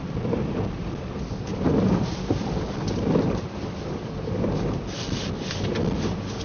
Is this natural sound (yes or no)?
no